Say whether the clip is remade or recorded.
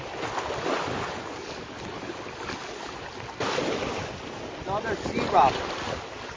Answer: recorded